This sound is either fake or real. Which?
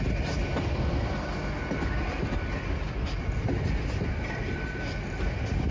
real